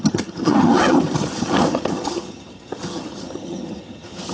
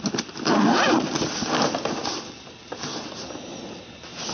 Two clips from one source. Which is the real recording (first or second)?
second